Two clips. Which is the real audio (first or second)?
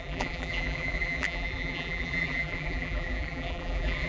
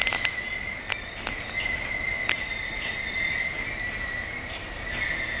second